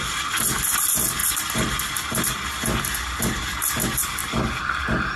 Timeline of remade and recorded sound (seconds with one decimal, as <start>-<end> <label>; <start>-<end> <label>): 0.0-5.2 recorded